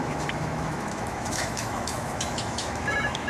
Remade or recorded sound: remade